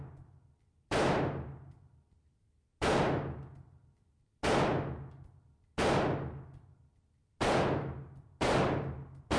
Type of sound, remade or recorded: recorded